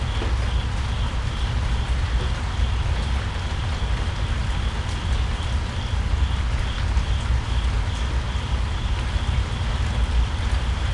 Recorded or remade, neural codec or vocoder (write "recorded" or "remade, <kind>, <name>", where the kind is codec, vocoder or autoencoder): recorded